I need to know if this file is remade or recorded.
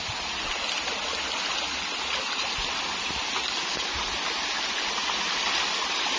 recorded